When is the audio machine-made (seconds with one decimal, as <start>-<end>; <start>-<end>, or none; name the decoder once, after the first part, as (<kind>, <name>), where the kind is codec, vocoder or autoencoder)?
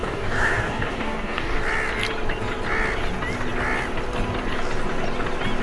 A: 0.0-1.6 (codec, DAC)